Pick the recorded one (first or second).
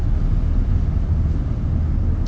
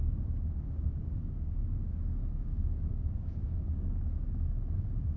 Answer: first